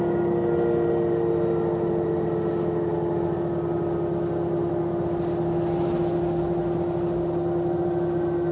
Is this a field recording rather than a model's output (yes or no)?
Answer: yes